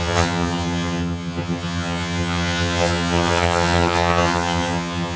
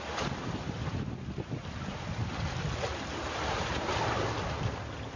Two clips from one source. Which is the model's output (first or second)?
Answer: first